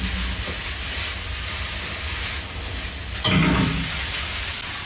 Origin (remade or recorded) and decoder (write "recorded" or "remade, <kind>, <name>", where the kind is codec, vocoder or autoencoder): recorded